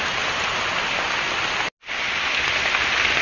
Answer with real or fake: real